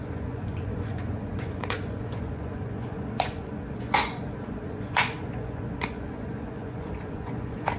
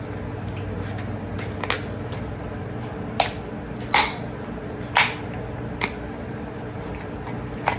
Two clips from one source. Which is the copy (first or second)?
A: first